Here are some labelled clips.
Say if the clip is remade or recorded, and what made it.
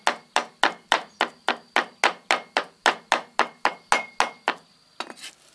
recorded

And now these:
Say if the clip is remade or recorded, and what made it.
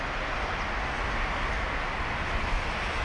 recorded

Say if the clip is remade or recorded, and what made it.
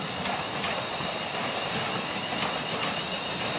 recorded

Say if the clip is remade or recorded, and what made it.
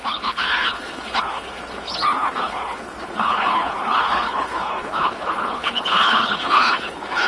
remade, codec, HILCodec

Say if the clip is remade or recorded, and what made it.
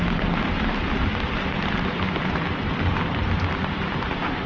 recorded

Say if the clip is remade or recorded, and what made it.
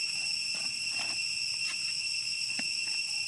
recorded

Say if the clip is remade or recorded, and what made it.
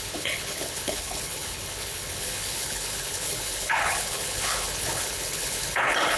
remade, codec, HILCodec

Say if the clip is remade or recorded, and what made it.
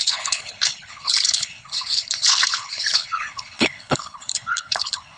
remade, codec, HILCodec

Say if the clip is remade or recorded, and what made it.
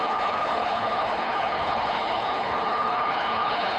remade, codec, HILCodec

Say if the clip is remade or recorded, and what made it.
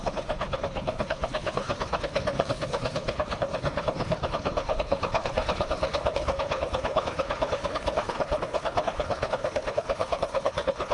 remade, codec, HILCodec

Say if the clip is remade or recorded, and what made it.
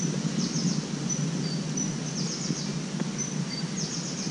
recorded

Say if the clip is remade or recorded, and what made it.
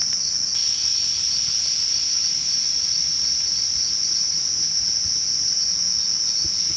recorded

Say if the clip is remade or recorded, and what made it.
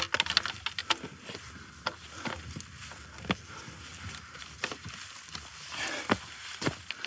recorded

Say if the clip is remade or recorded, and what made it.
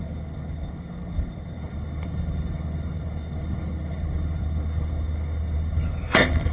remade, codec, HILCodec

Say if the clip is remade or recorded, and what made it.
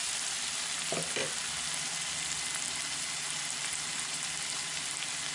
recorded